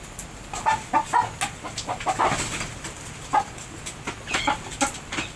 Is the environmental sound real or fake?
real